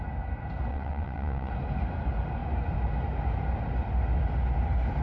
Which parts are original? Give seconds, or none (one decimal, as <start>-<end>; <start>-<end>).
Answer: 0.0-0.7; 1.5-5.0